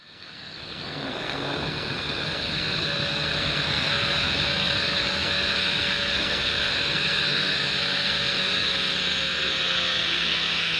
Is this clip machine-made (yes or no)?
yes